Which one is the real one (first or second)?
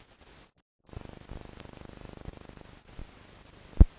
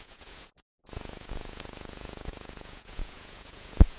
first